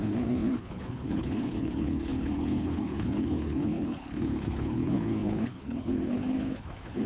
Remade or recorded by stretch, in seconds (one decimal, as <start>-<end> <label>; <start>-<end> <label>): 0.0-7.1 remade